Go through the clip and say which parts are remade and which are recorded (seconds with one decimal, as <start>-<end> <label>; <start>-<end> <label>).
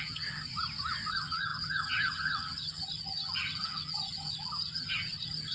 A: 0.0-0.5 remade; 0.5-1.1 recorded; 1.1-5.5 remade